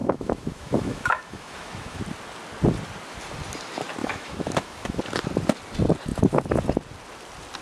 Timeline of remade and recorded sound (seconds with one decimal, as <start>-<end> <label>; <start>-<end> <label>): 0.0-2.0 remade; 2.0-4.0 recorded; 4.0-5.0 remade; 5.0-7.6 recorded

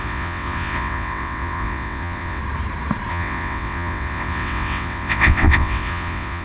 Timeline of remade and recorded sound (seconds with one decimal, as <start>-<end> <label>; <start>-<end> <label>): 0.0-2.4 remade; 2.4-3.1 recorded; 3.1-6.4 remade

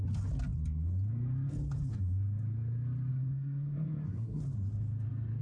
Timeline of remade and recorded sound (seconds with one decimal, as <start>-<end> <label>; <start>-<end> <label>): 0.0-3.1 recorded; 3.1-4.4 remade; 4.4-5.4 recorded

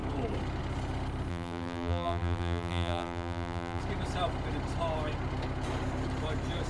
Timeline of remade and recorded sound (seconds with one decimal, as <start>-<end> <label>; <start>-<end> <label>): 0.0-1.3 recorded; 1.3-3.8 remade; 3.8-6.7 recorded

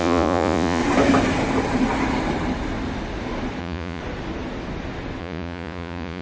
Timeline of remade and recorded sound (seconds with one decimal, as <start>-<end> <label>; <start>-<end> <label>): 0.0-0.8 remade; 0.8-3.6 recorded; 3.6-4.0 remade; 4.0-5.2 recorded; 5.2-6.2 remade

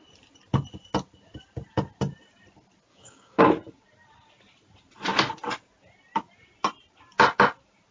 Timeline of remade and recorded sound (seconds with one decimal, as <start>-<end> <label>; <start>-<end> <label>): 0.0-2.9 recorded; 2.9-3.4 remade; 3.4-7.9 recorded

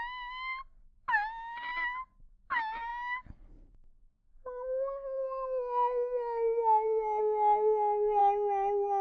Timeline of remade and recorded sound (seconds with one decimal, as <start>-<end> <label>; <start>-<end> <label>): 0.0-9.0 recorded

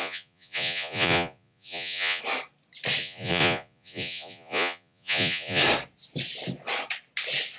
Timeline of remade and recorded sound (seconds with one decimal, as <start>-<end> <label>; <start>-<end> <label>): 0.0-2.2 remade; 2.2-3.0 recorded; 3.0-5.6 remade; 5.6-7.6 recorded